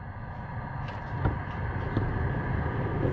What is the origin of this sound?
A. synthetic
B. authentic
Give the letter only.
B